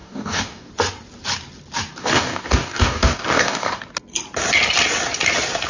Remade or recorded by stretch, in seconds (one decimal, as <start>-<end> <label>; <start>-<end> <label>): 0.0-0.7 remade; 0.7-2.0 recorded; 2.0-3.8 remade; 3.8-5.7 recorded